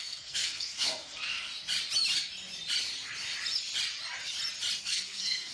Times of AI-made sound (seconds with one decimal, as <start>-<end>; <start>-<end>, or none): 0.0-1.5; 4.8-5.5